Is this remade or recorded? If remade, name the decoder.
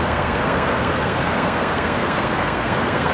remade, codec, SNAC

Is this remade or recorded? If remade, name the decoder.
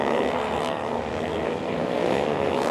remade, codec, SNAC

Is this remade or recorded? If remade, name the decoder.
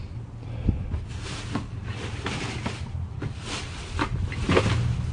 recorded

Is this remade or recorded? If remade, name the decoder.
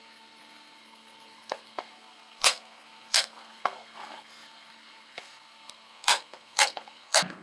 remade, codec, SNAC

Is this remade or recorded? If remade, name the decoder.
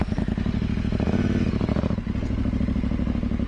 recorded